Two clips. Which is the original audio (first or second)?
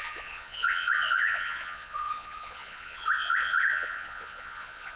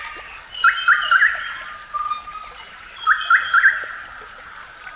second